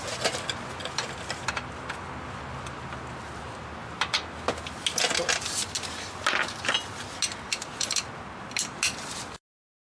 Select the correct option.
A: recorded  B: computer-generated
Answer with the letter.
A